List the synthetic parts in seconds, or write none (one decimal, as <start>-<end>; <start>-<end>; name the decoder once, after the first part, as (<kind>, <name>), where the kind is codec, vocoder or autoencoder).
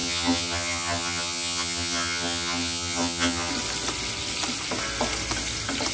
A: 0.0-3.5 (vocoder, HiFi-GAN)